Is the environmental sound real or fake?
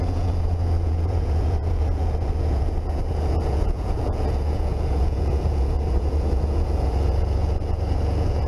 fake